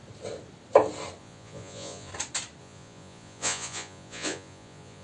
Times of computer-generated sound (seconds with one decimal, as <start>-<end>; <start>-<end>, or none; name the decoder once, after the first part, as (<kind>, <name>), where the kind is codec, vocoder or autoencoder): 1.2-2.1 (vocoder, Vocos); 2.6-5.0